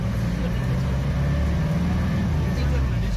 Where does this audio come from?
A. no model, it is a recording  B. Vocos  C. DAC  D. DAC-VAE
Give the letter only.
A